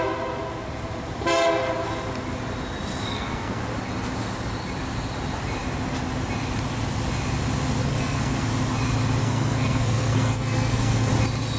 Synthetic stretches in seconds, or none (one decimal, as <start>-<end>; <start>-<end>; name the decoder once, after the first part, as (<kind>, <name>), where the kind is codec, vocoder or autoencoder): 3.1-3.6 (codec, SNAC); 7.8-8.5; 9.2-11.1

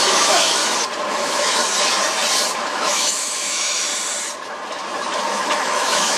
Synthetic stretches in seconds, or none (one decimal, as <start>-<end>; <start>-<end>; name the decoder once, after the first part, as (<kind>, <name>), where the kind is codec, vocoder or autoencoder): 0.0-0.6 (autoencoder, DAC-VAE); 1.1-1.6; 2.7-3.9; 5.3-6.2

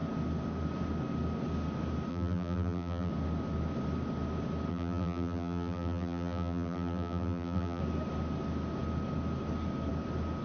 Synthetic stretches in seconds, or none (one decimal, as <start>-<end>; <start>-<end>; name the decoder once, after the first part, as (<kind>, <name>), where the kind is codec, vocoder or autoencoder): 2.1-3.1 (vocoder, BigVGAN v2); 4.7-7.8